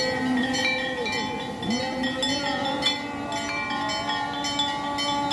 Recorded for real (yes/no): yes